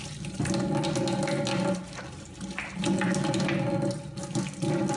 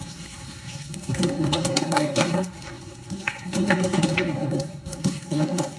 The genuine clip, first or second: first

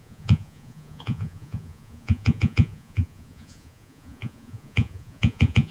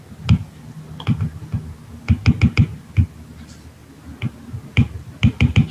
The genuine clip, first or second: second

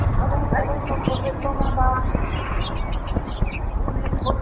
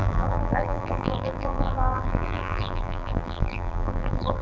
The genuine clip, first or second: first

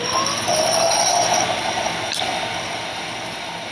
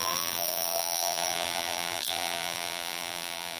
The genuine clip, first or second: first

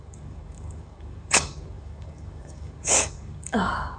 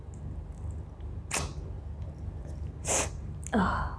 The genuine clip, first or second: second